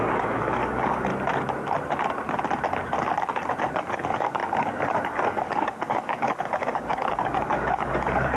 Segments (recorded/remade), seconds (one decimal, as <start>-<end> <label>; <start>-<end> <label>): 0.0-1.1 remade; 1.1-3.6 recorded; 3.6-8.4 remade